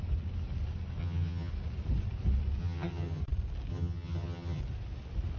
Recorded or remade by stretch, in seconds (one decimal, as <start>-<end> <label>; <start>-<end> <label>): 0.0-1.0 recorded; 1.0-1.5 remade; 1.5-2.6 recorded; 2.6-3.2 remade; 3.2-3.7 recorded; 3.7-4.6 remade; 4.6-5.4 recorded